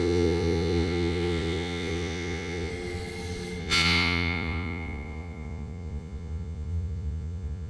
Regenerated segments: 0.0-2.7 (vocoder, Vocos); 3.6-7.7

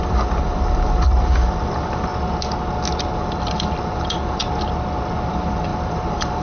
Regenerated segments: 0.0-2.1 (vocoder, BigVGAN v2); 3.1-4.4; 5.3-6.4